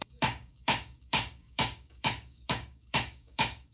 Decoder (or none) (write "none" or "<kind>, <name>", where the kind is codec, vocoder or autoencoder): codec, DAC